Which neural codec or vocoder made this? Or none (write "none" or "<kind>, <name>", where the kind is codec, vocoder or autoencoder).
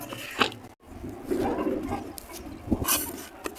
none